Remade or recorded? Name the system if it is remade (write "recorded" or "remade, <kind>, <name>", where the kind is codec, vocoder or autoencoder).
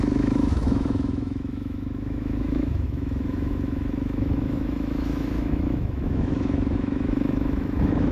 remade, autoencoder, DAC-VAE